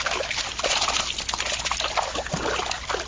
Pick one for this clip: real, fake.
real